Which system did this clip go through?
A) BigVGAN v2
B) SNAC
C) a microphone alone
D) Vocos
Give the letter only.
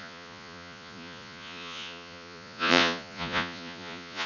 D